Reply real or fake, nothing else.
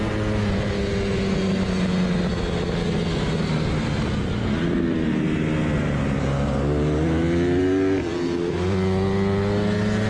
real